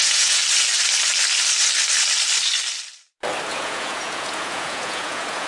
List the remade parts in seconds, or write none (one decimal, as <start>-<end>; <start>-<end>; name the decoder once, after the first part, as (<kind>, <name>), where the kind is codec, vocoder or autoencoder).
0.0-0.4 (vocoder, Vocos); 3.5-5.5